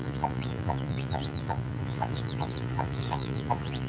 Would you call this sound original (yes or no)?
no